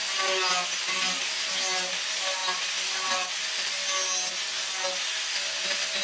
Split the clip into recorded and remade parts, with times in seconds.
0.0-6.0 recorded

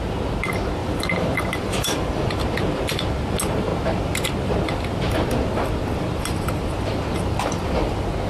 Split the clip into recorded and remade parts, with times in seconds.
0.0-0.8 recorded; 0.8-2.4 remade; 2.4-8.3 recorded

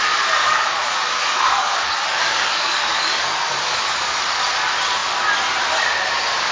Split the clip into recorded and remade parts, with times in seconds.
0.0-0.4 recorded; 0.4-3.8 remade; 3.8-6.5 recorded

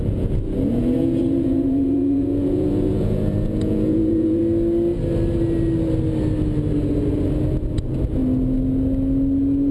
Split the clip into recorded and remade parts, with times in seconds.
0.0-4.4 remade; 4.4-7.5 recorded; 7.5-8.2 remade; 8.2-9.7 recorded

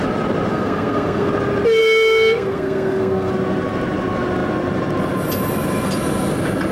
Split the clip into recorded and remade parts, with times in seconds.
0.0-0.5 recorded; 0.5-1.3 remade; 1.3-1.8 recorded; 1.8-3.3 remade; 3.3-6.7 recorded

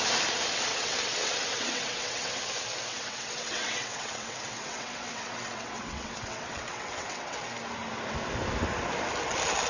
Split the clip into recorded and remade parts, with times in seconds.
0.0-0.7 recorded; 0.7-2.4 remade; 2.4-2.9 recorded; 2.9-7.4 remade; 7.4-9.7 recorded